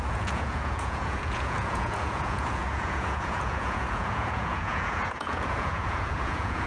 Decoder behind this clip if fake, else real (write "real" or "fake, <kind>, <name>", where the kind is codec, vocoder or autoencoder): fake, vocoder, Vocos